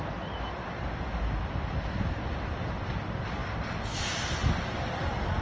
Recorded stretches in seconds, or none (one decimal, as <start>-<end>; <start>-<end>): 0.0-5.4